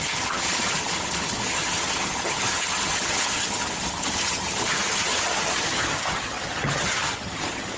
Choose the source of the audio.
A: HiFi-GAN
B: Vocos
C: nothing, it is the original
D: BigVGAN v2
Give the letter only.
A